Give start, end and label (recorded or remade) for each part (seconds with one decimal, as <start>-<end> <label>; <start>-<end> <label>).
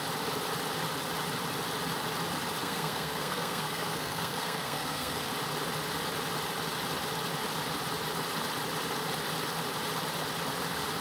0.0-2.6 recorded; 2.6-5.3 remade; 5.3-11.0 recorded